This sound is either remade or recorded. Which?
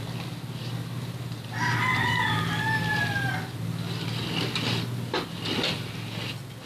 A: recorded